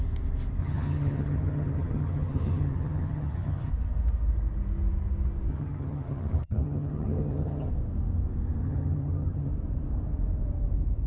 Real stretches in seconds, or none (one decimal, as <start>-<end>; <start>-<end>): 0.0-0.6; 3.7-5.5; 7.7-8.6; 9.5-11.1